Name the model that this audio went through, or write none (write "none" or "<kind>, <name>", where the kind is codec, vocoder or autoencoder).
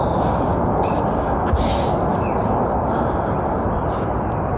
none